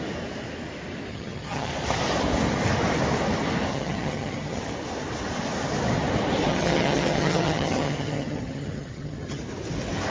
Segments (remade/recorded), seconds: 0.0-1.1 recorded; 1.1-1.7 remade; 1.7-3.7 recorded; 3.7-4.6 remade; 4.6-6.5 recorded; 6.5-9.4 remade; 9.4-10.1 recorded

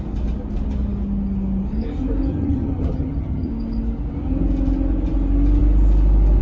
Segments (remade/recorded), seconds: 0.0-2.3 recorded; 2.3-3.5 remade; 3.5-6.4 recorded

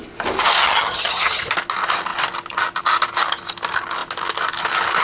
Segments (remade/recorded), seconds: 0.0-0.6 recorded; 0.6-1.4 remade; 1.4-5.0 recorded

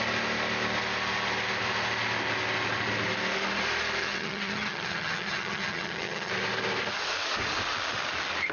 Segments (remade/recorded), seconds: 0.0-4.0 recorded; 4.0-6.3 remade; 6.3-8.5 recorded

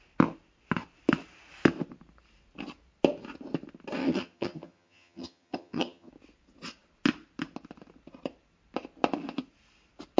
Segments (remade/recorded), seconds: 0.0-4.0 recorded; 4.0-6.1 remade; 6.1-10.2 recorded

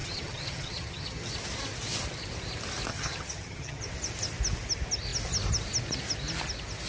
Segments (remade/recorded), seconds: 0.0-1.3 remade; 1.3-2.9 recorded; 2.9-3.8 remade; 3.8-6.9 recorded